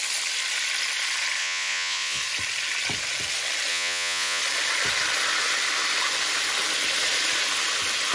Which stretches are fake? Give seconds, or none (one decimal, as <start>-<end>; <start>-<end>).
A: 1.4-2.2; 3.7-4.4